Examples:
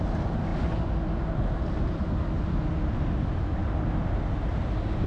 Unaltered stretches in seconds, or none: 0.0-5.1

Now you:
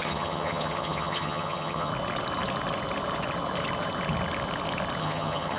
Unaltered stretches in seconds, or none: 1.9-5.0

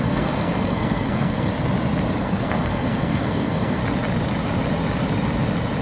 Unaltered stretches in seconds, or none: 1.5-2.2; 3.8-5.8

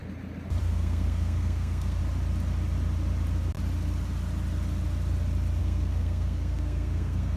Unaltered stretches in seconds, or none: 0.0-0.6; 2.0-5.6